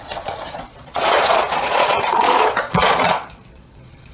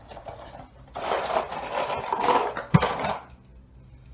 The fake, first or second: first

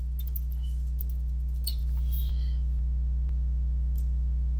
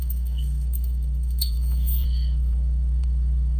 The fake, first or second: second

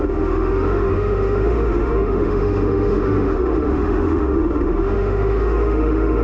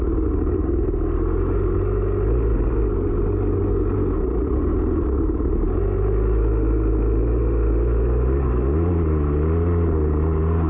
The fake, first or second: first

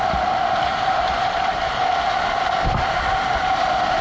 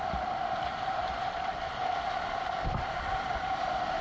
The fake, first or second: second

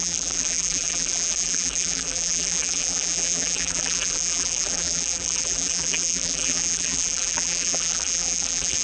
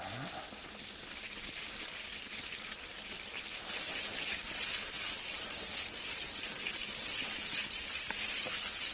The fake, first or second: first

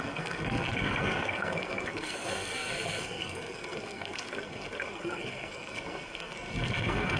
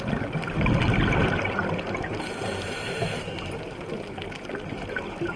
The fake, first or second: first